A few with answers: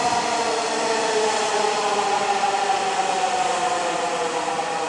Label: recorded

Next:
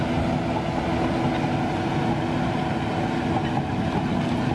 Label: recorded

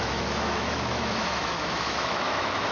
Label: remade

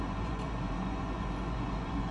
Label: remade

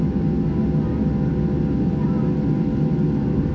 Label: recorded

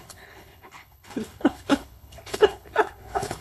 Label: remade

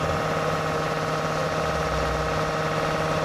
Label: recorded